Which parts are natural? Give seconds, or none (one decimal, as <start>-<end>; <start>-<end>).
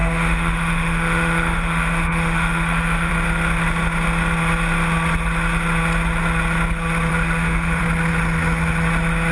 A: 3.1-7.1; 7.8-9.3